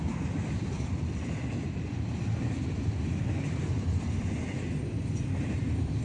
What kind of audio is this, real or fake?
fake